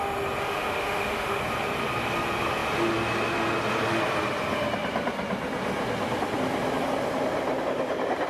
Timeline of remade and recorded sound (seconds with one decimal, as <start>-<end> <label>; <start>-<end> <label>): 0.0-0.4 recorded; 0.4-1.4 remade; 1.4-8.3 recorded